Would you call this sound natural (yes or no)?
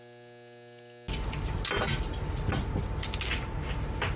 yes